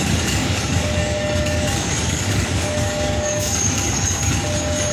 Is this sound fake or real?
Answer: fake